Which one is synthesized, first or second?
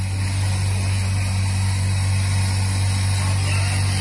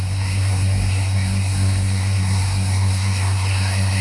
second